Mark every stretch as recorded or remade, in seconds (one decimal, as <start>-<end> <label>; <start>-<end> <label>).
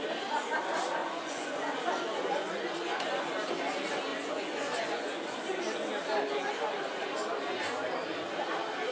0.0-1.0 recorded; 1.0-3.3 remade; 3.3-4.1 recorded; 4.1-5.6 remade; 5.6-8.9 recorded